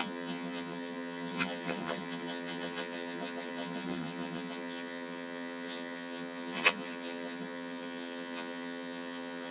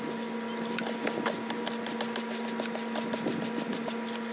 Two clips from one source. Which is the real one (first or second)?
second